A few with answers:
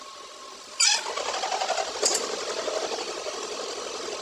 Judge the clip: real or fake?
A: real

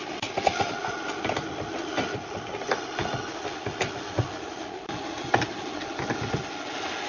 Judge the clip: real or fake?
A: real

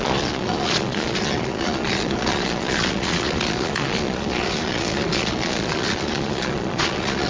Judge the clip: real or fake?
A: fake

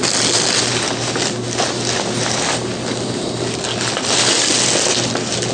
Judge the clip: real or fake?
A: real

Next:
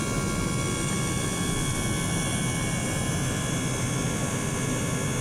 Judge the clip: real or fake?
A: real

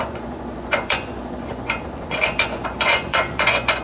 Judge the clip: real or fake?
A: fake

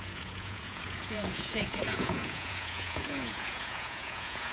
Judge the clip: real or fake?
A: fake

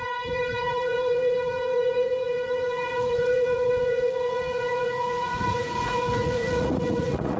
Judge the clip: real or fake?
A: fake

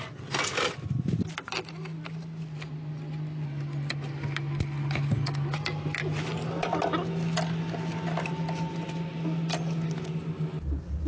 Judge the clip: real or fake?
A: real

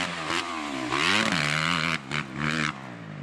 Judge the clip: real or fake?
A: real